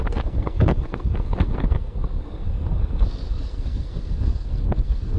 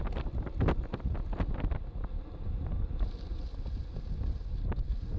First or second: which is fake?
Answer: first